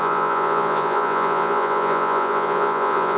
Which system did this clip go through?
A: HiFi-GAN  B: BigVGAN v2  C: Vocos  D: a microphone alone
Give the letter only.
C